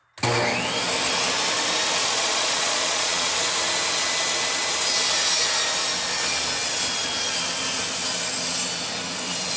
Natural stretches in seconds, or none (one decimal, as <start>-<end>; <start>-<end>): 0.0-2.0; 3.3-9.6